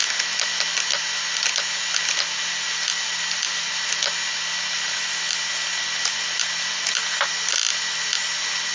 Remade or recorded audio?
recorded